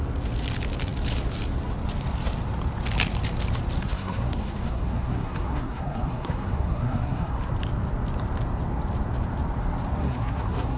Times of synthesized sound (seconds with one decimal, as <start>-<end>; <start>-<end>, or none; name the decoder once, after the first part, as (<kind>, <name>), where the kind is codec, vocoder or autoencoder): 3.8-7.5 (codec, SNAC); 10.0-10.8